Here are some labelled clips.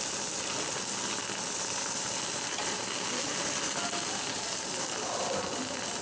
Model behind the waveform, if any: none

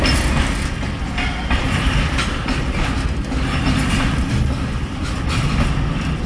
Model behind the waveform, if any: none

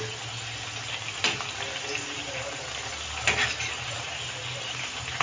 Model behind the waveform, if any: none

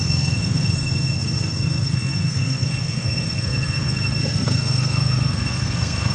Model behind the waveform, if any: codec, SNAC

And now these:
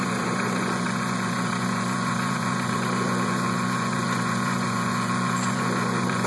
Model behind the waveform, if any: vocoder, Vocos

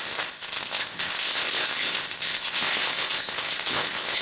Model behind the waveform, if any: codec, ZipCodec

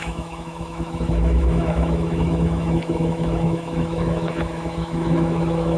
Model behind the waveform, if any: autoencoder, DAC-VAE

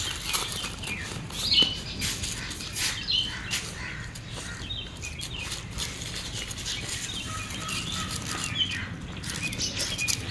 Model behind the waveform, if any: none